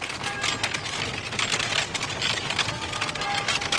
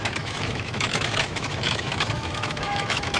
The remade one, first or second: second